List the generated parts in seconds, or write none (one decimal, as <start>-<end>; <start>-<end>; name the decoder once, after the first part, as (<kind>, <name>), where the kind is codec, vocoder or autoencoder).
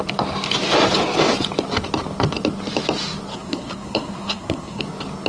3.3-4.8 (codec, SNAC)